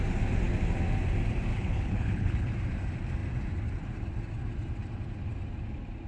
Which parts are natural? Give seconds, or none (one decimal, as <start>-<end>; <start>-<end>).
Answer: 0.0-1.5; 2.5-6.1